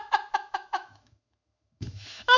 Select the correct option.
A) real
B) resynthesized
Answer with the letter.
B